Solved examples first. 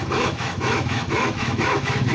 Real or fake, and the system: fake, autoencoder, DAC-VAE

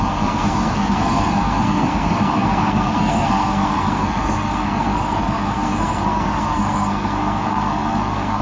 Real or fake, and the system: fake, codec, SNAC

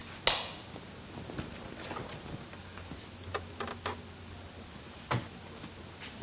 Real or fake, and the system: real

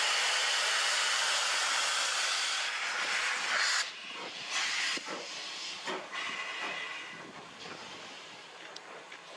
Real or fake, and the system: real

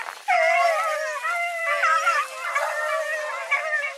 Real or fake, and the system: real